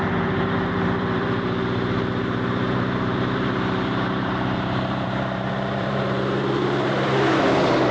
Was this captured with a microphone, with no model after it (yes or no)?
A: no